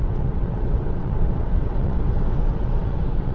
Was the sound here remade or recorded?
remade